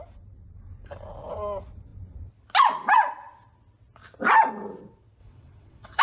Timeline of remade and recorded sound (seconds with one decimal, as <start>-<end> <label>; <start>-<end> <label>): 0.0-5.2 recorded; 5.2-6.0 remade